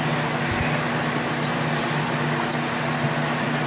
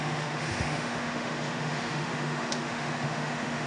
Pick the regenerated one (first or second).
second